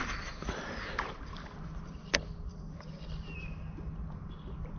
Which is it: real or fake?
real